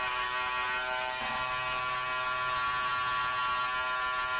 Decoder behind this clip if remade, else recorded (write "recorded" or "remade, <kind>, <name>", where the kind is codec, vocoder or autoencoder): recorded